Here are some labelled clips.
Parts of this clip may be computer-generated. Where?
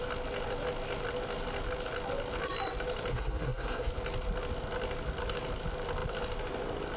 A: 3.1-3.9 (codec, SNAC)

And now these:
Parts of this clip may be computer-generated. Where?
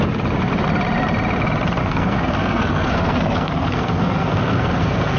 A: 1.8-5.2 (codec, SNAC)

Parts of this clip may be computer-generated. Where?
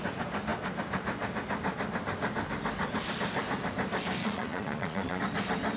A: 4.2-5.2 (vocoder, Vocos)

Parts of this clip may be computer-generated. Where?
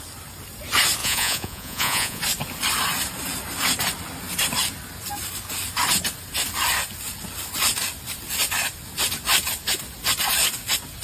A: 1.0-2.2 (vocoder, Vocos)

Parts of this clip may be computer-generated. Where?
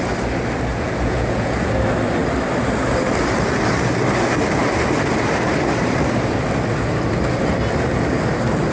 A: 0.7-1.7 (vocoder, Vocos)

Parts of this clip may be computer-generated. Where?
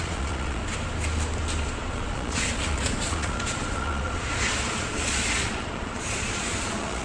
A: 0.0-0.6 (vocoder, Vocos); 1.6-7.0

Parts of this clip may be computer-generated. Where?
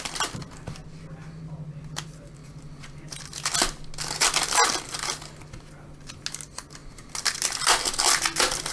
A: none